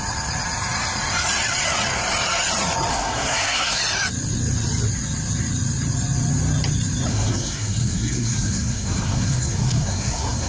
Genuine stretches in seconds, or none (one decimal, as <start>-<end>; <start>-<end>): 0.0-2.9; 3.8-7.1